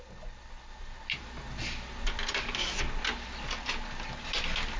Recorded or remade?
recorded